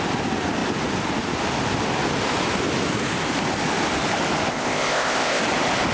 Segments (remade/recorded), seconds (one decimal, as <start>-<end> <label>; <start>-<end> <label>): 0.0-4.5 recorded; 4.5-5.4 remade; 5.4-5.9 recorded